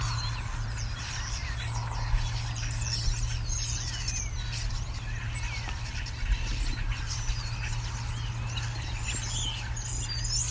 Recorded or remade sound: recorded